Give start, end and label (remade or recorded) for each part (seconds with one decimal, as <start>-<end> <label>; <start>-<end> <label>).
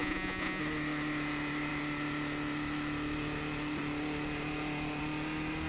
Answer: 0.0-0.6 remade; 0.6-5.7 recorded